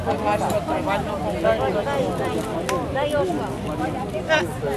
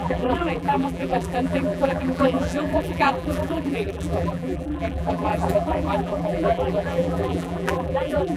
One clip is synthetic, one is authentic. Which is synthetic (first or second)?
second